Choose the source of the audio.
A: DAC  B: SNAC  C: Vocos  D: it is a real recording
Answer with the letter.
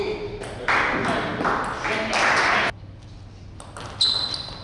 D